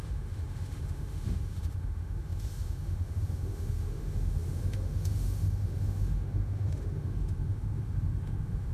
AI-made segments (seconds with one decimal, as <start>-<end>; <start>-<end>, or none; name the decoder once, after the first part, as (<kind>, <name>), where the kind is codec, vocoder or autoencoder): 0.0-8.7 (autoencoder, DAC-VAE)

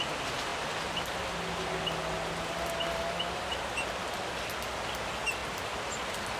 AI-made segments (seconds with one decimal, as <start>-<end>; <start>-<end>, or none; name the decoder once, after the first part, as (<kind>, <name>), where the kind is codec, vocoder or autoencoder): none

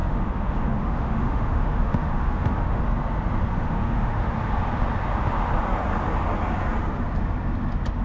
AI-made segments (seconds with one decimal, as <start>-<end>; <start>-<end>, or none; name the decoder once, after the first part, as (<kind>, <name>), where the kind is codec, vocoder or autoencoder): 0.0-2.8 (autoencoder, DAC-VAE); 3.5-4.3

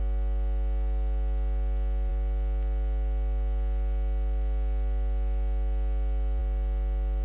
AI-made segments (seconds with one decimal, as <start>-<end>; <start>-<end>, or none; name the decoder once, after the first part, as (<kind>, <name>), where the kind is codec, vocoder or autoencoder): none

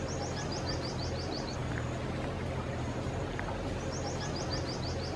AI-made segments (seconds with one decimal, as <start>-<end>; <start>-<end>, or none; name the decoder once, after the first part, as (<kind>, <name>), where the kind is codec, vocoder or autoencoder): none